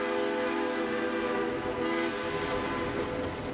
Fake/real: real